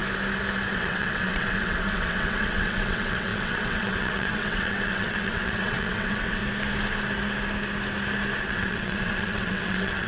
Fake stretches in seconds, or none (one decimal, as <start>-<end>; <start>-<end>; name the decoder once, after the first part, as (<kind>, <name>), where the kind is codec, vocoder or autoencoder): 0.7-6.4 (vocoder, WaveNeXt); 8.5-10.1